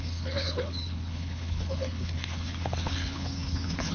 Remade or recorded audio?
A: remade